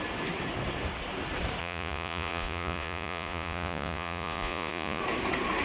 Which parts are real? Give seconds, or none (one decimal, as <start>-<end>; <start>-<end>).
0.0-1.6; 5.0-5.6